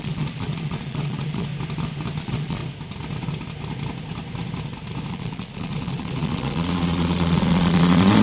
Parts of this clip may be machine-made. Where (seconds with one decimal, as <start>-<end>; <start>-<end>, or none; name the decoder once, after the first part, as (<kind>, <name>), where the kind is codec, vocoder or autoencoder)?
0.0-1.5 (vocoder, Vocos); 2.2-2.6; 5.1-8.2